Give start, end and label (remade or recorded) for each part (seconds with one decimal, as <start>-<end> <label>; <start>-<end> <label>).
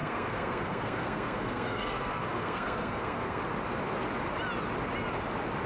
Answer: 0.0-3.4 remade; 3.4-5.7 recorded